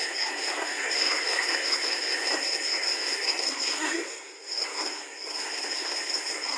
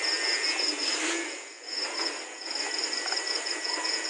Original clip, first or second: second